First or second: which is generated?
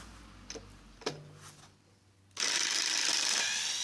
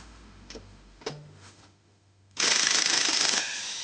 second